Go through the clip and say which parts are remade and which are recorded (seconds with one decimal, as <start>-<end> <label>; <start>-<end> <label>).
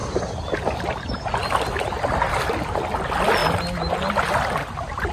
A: 0.0-5.1 recorded